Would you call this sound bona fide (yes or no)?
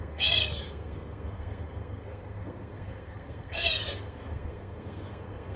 no